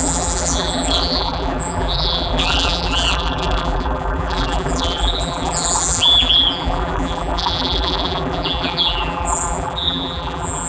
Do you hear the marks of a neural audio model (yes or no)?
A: yes